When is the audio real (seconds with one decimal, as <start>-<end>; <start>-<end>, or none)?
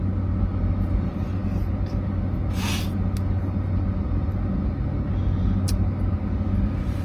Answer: 0.0-7.0